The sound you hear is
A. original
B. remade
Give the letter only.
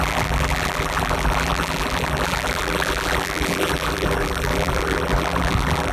B